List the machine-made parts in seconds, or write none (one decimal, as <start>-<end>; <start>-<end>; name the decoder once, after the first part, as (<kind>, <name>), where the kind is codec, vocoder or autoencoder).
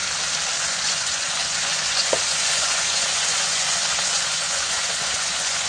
0.6-5.7 (vocoder, Vocos)